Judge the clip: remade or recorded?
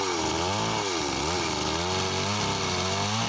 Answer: recorded